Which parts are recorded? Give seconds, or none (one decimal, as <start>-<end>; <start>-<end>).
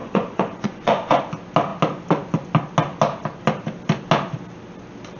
1.2-5.2